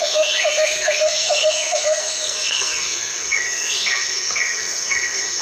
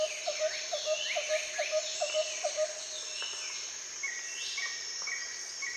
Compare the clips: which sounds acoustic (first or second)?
second